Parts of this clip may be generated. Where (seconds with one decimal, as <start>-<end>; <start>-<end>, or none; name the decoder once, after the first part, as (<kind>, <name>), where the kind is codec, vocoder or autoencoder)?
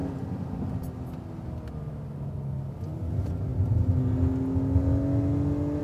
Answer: none